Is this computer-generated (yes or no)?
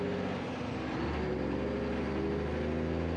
no